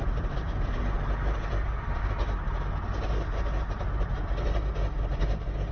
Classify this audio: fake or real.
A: real